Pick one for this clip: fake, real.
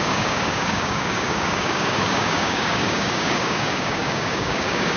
fake